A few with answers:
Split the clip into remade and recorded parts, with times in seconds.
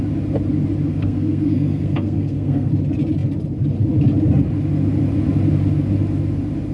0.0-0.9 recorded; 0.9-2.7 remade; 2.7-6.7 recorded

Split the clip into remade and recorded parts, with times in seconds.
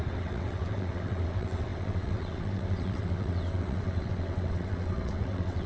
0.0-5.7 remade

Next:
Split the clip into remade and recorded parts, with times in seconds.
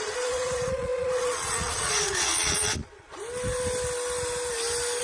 0.0-3.2 remade; 3.2-5.0 recorded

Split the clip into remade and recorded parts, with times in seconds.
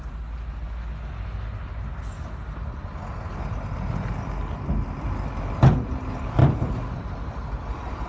0.0-6.4 recorded; 6.4-8.1 remade